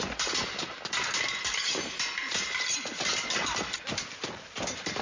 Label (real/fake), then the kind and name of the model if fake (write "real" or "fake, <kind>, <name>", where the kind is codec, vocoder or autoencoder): real